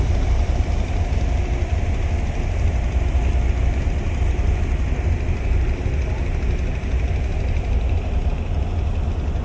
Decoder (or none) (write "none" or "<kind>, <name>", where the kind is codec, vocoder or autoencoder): none